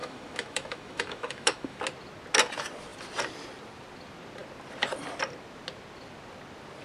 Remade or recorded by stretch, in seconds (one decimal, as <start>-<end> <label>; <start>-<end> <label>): 0.0-1.8 remade; 1.8-6.8 recorded